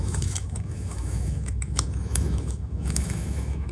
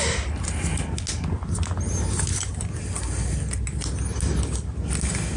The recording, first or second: second